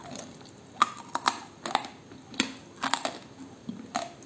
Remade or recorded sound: recorded